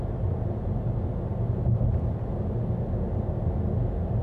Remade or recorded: recorded